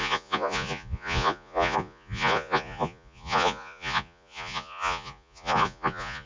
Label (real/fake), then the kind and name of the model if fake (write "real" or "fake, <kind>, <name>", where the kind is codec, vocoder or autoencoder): fake, vocoder, Vocos